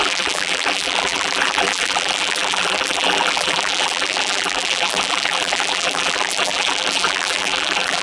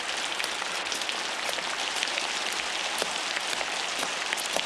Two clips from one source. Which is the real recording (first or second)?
second